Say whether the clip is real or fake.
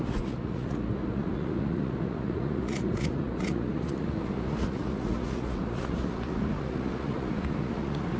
fake